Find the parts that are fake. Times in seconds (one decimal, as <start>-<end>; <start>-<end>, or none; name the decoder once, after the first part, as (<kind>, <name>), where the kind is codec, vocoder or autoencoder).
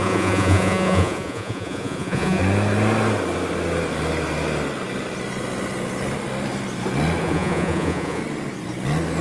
0.0-2.4 (vocoder, Vocos); 7.2-8.2